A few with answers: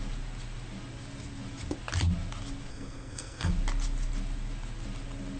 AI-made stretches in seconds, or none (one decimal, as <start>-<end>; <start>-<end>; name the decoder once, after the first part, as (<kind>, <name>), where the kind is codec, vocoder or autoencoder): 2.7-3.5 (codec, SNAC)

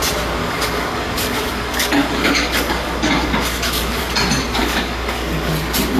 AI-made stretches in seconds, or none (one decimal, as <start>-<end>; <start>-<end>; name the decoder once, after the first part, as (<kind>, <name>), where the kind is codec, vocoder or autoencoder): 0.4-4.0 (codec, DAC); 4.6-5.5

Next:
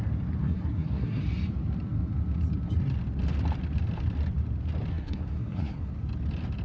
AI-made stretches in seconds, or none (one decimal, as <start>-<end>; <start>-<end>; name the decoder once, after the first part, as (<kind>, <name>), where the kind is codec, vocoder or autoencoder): 0.4-1.2 (codec, SNAC); 4.9-5.9